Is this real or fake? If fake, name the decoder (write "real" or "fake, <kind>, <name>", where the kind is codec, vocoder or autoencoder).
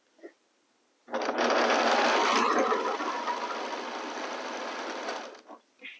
real